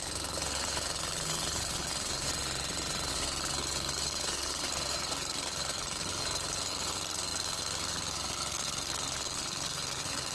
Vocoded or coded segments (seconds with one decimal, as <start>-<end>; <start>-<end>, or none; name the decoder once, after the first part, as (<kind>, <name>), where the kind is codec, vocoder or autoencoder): 0.0-2.3 (codec, SNAC); 3.1-10.3